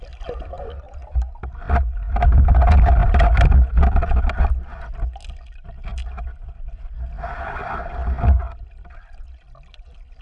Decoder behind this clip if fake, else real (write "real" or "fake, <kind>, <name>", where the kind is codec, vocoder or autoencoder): real